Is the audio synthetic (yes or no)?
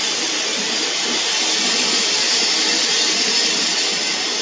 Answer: no